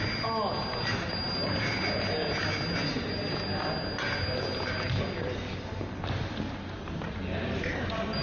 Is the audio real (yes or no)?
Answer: yes